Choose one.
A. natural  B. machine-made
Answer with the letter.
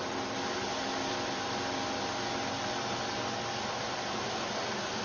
A